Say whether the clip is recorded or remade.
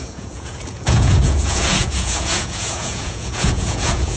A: remade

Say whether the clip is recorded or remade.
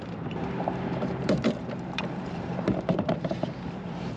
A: remade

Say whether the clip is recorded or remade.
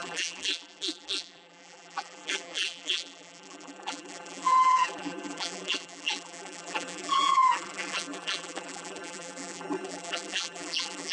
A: remade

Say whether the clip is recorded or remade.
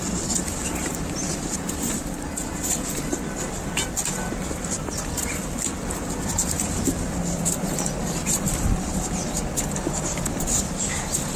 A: recorded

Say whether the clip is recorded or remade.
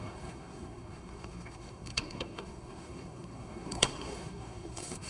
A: remade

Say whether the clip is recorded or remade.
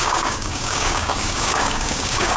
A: remade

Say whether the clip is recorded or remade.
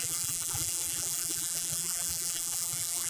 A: remade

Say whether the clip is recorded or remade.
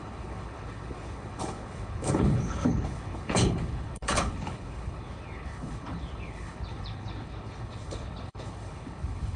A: remade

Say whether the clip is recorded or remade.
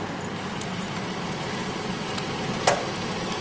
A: recorded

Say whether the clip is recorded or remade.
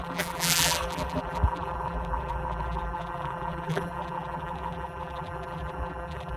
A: remade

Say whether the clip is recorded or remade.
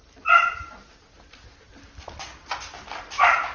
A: recorded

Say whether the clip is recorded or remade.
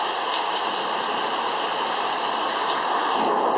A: remade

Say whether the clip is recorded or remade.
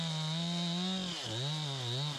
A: recorded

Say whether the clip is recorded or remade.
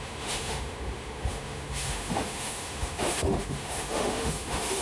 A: remade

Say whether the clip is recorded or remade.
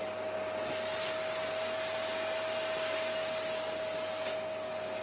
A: recorded